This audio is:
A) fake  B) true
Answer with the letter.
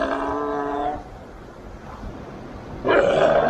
B